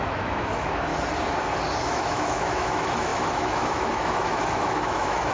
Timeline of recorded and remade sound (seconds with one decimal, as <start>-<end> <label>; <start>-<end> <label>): 0.0-0.9 remade; 0.9-1.8 recorded; 1.8-5.3 remade